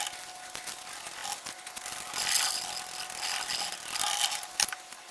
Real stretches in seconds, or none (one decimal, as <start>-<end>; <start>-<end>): 0.0-5.1